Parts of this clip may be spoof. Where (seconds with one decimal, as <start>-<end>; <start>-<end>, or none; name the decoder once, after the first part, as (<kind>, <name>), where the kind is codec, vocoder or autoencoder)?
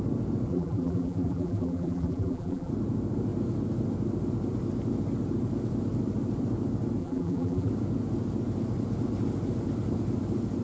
0.5-2.7 (vocoder, BigVGAN v2); 7.0-7.7